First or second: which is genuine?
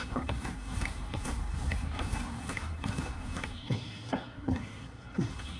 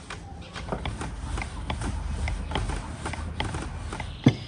second